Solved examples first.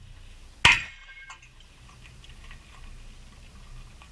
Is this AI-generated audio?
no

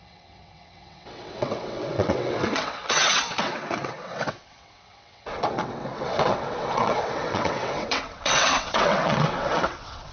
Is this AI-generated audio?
yes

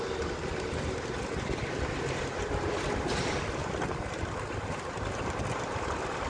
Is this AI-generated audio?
no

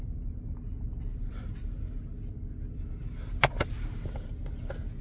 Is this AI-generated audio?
no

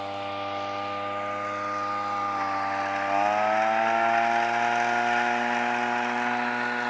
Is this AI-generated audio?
no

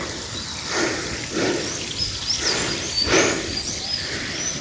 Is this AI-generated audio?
no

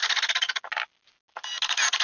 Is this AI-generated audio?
no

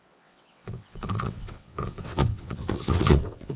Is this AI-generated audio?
yes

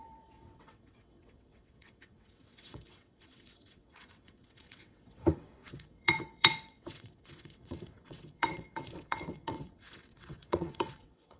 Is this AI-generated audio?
yes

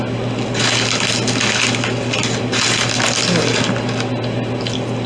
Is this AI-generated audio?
no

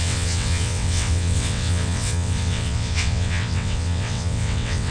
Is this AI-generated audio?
yes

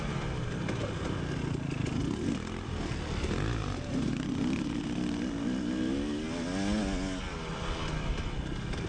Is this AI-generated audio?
no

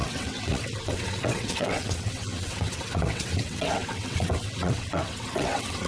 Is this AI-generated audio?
yes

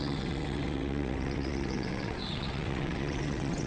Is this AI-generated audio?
yes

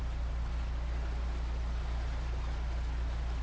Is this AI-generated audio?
no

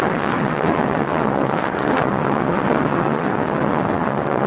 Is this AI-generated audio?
yes